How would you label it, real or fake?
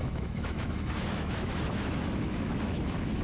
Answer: fake